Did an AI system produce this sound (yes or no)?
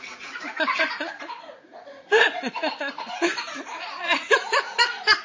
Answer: yes